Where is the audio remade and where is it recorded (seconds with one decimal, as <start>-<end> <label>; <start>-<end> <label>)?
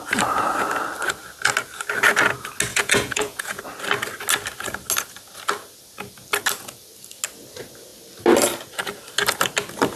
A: 0.0-2.7 recorded; 2.7-3.6 remade; 3.6-10.0 recorded